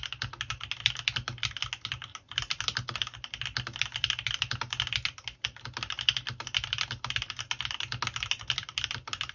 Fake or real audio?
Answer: real